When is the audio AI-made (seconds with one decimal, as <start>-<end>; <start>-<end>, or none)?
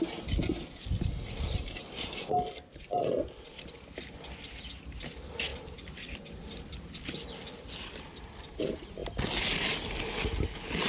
none